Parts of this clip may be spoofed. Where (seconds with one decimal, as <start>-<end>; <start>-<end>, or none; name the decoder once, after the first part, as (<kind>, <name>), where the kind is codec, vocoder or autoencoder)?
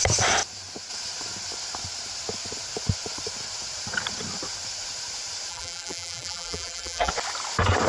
5.5-7.1 (vocoder, BigVGAN v2)